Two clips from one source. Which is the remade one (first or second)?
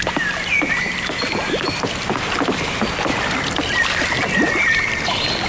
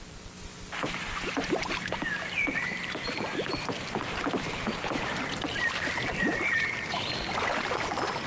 second